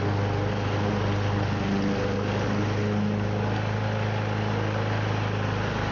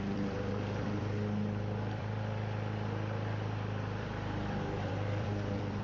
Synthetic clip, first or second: second